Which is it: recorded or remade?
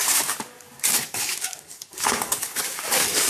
remade